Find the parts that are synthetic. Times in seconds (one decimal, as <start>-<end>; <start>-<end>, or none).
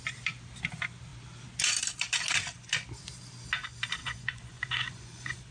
4.0-5.5